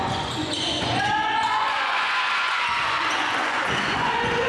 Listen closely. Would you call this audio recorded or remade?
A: remade